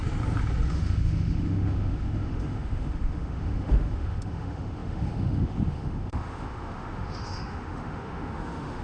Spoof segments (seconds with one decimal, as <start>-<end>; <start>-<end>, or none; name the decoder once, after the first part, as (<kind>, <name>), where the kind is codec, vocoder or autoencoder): 0.7-8.8 (autoencoder, DAC-VAE)